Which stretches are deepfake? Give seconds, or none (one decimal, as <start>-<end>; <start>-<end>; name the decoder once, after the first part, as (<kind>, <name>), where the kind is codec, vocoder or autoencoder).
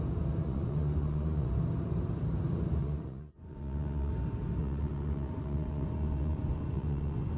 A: 0.4-1.5 (vocoder, Vocos); 2.8-4.1; 4.6-7.4